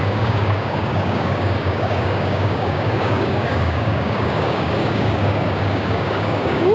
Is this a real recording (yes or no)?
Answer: no